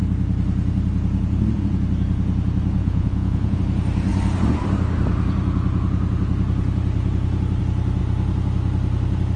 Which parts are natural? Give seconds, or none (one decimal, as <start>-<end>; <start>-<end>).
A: 0.0-2.8; 3.6-9.4